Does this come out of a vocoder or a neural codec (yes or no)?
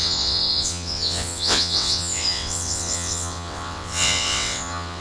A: yes